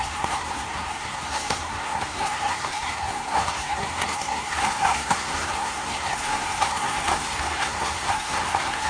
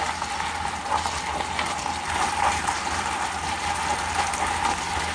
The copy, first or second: first